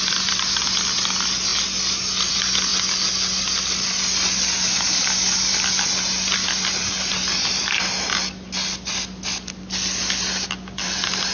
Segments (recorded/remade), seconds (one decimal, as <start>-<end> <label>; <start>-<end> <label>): 0.0-11.3 recorded